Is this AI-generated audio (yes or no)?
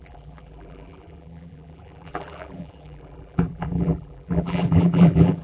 yes